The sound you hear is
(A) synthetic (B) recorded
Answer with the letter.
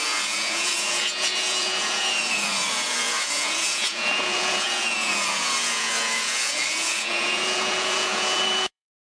A